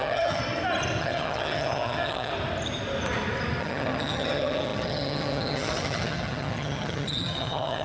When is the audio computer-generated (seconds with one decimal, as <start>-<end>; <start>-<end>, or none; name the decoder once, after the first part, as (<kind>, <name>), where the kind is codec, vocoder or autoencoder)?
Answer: 0.0-0.4 (vocoder, HiFi-GAN); 1.0-2.3; 3.6-7.8